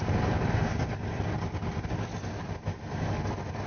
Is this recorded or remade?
recorded